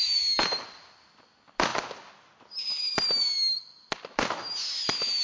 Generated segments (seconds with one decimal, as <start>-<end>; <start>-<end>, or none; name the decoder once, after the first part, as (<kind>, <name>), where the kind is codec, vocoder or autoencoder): none